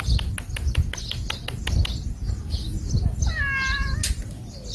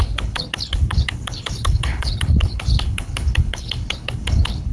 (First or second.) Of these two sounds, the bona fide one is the first